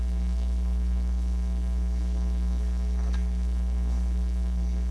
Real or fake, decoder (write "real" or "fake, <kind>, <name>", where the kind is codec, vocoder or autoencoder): fake, codec, SNAC